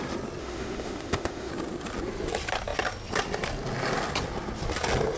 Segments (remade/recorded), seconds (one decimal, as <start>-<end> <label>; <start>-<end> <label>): 0.0-0.4 recorded; 0.4-1.5 remade; 1.5-5.2 recorded